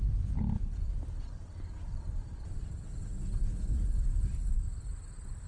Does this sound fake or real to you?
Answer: real